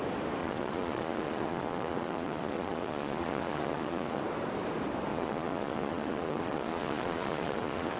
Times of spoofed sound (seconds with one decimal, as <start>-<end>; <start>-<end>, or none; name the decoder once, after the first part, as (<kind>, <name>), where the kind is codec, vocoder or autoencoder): 0.4-4.2 (vocoder, Vocos); 5.1-8.0